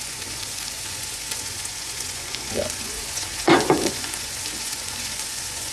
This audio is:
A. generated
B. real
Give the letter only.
A